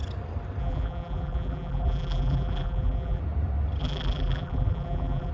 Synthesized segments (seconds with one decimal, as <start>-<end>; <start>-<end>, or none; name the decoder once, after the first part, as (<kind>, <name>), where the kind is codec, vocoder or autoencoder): 0.6-3.2 (vocoder, BigVGAN v2); 3.8-5.3